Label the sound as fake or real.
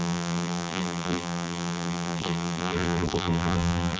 fake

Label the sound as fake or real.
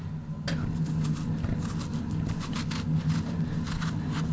real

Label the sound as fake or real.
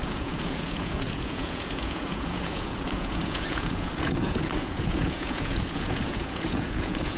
fake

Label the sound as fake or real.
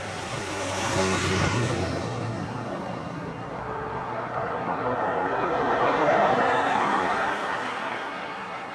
fake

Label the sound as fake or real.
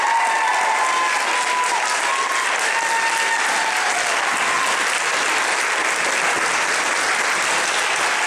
real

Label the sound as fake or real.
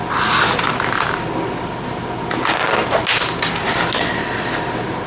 real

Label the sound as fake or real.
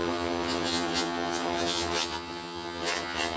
fake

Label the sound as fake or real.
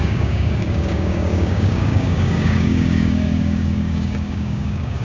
fake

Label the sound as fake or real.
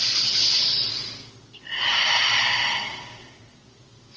real